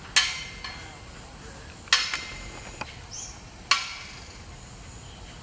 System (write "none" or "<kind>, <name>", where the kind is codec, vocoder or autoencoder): none